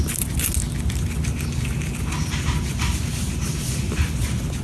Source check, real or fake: real